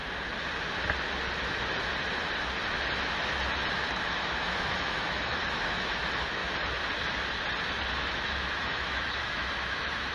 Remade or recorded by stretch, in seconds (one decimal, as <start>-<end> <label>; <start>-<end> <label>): 0.0-3.7 recorded; 3.7-6.4 remade; 6.4-7.9 recorded; 7.9-10.1 remade